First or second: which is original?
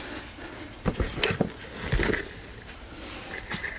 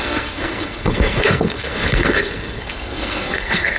first